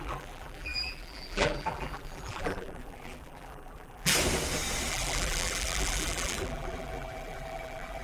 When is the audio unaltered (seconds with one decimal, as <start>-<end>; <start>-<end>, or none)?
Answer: 4.1-4.9